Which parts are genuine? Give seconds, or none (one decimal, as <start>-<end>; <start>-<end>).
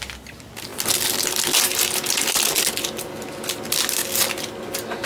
0.0-5.1